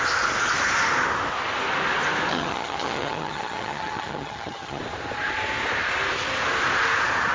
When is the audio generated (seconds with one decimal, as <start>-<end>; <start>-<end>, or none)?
2.3-4.8